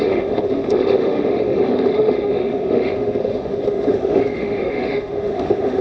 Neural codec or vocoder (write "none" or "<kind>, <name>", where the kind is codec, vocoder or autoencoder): autoencoder, DAC-VAE